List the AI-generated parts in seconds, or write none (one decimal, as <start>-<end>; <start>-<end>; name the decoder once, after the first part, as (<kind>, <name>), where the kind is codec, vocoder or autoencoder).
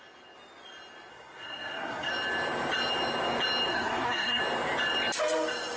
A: 1.1-2.1 (codec, SNAC); 3.7-4.4